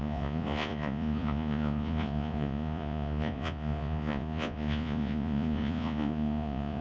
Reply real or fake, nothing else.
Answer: fake